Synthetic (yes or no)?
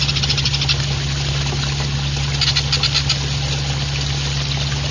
no